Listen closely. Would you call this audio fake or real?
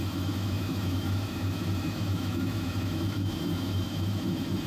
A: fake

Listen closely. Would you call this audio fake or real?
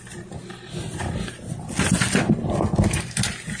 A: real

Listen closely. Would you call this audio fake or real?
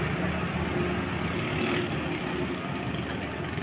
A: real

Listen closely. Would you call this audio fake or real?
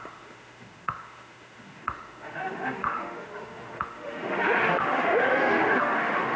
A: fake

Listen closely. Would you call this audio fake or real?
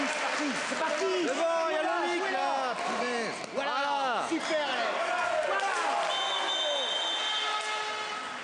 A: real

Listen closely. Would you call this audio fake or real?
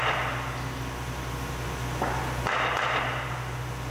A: real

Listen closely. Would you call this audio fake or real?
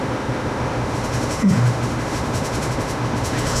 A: fake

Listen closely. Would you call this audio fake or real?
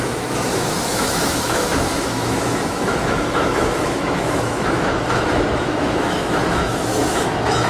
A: fake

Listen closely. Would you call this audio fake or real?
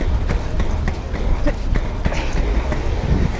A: real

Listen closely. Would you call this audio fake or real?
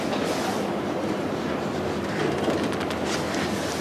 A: real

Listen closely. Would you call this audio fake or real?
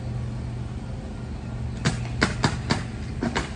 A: real